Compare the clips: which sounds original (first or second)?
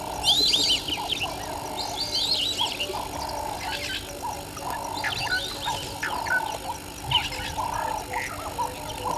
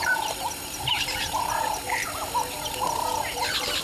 first